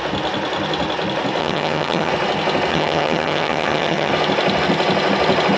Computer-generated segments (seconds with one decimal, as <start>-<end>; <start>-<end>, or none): 1.4-2.1; 2.7-4.1